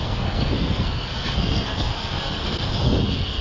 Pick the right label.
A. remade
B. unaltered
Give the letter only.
A